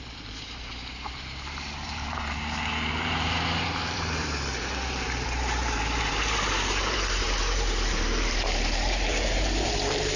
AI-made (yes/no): yes